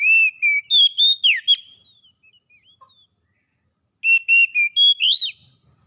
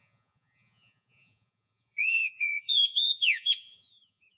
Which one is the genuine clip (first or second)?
first